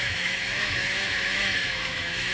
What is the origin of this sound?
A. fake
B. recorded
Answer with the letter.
A